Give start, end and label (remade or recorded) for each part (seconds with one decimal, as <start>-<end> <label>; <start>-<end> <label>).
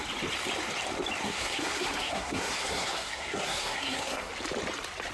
0.0-1.2 recorded; 1.2-4.3 remade; 4.3-5.1 recorded